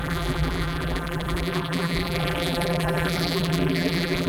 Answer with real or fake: fake